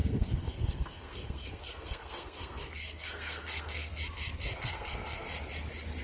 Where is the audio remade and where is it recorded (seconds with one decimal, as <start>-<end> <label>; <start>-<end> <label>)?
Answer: 0.0-3.9 remade; 3.9-4.6 recorded; 4.6-5.3 remade; 5.3-6.0 recorded